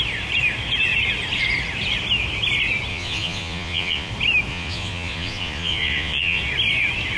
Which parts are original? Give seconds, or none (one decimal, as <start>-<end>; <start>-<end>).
0.0-2.9; 4.1-4.5; 6.4-7.2